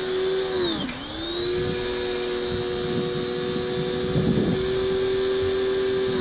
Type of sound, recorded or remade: recorded